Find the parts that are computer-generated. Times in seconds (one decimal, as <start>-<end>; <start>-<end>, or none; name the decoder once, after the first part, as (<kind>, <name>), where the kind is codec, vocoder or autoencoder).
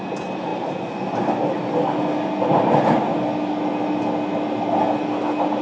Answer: none